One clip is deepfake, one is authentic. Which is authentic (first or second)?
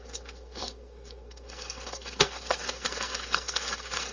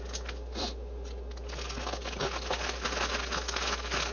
second